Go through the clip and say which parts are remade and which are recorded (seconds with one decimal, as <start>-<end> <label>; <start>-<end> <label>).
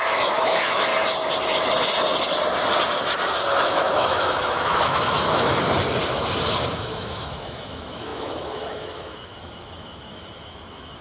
0.0-0.9 remade; 0.9-3.5 recorded; 3.5-5.6 remade; 5.6-6.7 recorded; 6.7-11.0 remade